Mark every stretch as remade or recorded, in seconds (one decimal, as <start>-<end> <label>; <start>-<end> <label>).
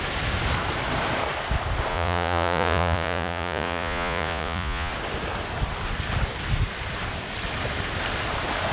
0.0-1.9 recorded; 1.9-4.9 remade; 4.9-8.7 recorded